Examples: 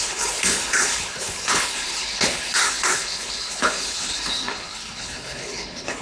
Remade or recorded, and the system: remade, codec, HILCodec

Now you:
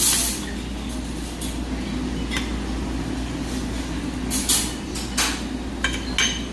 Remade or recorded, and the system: recorded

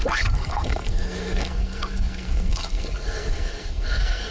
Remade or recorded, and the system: remade, codec, SNAC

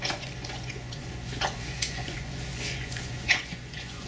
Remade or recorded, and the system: remade, vocoder, Vocos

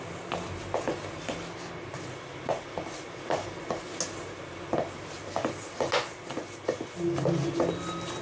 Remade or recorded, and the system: recorded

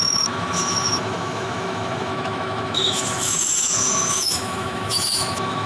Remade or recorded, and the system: remade, autoencoder, DAC-VAE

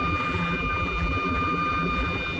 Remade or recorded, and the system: remade, vocoder, BigVGAN v2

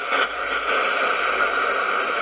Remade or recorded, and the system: remade, vocoder, BigVGAN v2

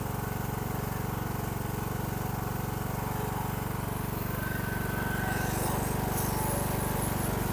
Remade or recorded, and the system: recorded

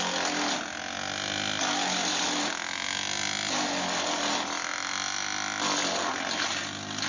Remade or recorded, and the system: recorded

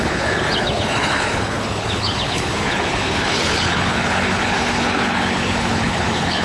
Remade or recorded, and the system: remade, codec, HILCodec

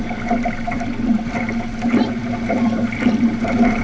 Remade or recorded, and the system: remade, vocoder, BigVGAN v2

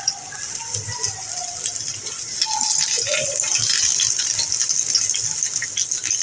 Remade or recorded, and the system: recorded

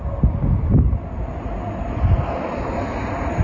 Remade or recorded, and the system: recorded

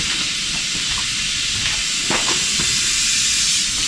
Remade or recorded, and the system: recorded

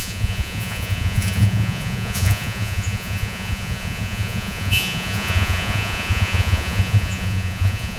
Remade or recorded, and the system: remade, vocoder, Vocos